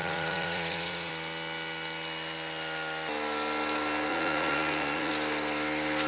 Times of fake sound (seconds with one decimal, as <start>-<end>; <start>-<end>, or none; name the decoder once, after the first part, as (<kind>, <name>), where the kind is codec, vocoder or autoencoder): 0.0-1.1 (vocoder, Vocos); 4.1-5.1